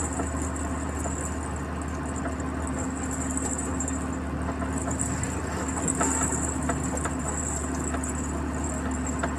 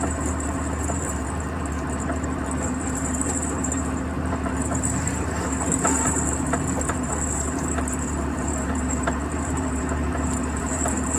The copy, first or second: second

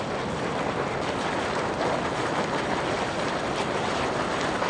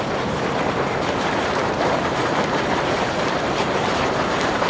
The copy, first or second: second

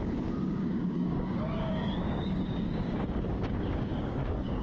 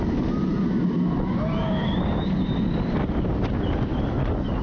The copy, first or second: first